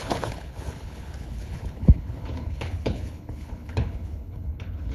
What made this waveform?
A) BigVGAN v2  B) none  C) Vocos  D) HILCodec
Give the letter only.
D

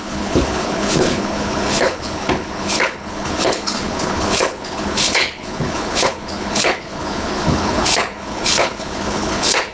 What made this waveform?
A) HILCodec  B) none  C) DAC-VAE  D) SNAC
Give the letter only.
A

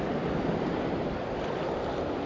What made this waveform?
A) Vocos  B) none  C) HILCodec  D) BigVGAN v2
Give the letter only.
B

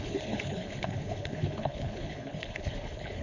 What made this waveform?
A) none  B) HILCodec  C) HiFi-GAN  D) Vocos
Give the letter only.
B